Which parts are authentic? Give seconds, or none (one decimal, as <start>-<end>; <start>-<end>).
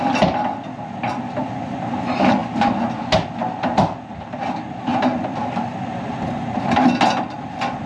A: 0.0-7.9